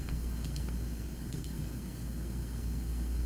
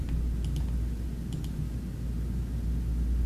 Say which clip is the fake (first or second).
first